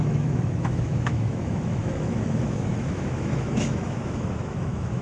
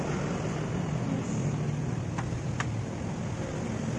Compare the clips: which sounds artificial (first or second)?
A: first